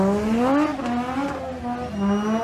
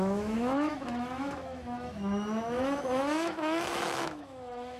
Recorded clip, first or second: first